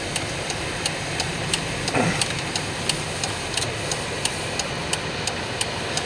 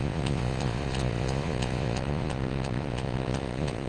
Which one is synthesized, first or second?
second